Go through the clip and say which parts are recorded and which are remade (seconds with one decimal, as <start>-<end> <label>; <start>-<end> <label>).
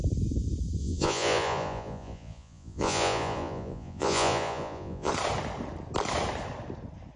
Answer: 0.0-0.8 recorded; 0.8-5.1 remade; 5.1-7.2 recorded